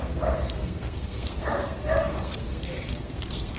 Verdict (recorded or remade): remade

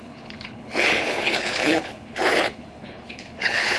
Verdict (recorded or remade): remade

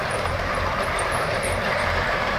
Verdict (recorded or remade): remade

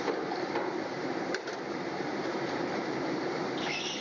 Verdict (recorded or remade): remade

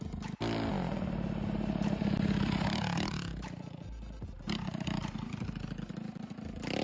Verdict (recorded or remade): recorded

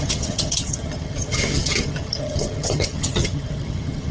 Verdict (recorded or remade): remade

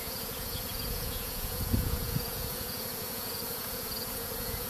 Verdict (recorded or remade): remade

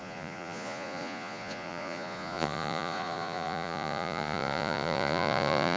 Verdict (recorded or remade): remade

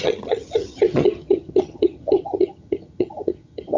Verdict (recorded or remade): remade